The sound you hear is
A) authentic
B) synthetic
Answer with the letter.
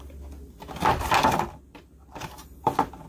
A